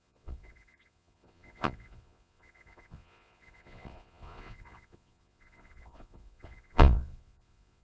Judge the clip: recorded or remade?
remade